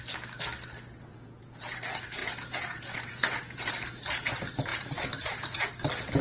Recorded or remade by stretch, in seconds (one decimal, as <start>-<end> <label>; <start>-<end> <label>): 0.0-1.1 recorded; 1.1-1.8 remade; 1.8-2.2 recorded; 2.2-3.7 remade; 3.7-4.7 recorded; 4.7-5.7 remade; 5.7-6.2 recorded